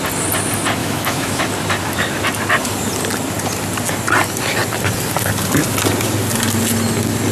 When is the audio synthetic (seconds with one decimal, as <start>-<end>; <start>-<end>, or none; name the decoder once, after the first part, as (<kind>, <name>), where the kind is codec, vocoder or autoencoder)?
0.8-1.4 (autoencoder, DAC-VAE)